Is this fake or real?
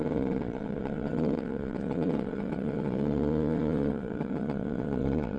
fake